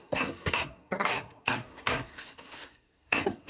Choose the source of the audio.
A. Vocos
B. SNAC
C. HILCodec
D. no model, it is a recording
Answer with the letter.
B